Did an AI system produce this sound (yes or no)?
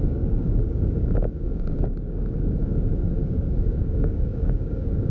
yes